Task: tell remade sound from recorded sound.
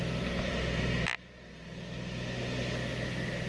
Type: recorded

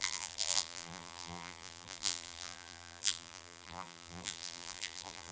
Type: remade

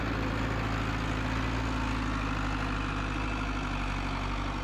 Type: recorded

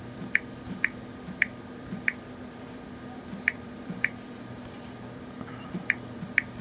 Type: remade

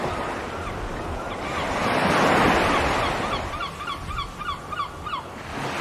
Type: recorded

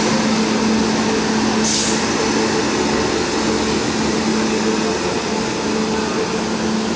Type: recorded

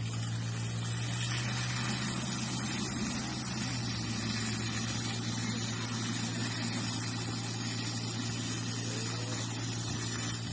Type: recorded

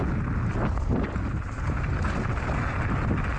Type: recorded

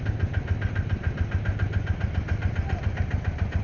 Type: recorded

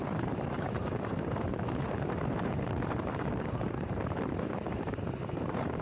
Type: remade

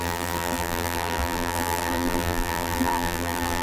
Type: remade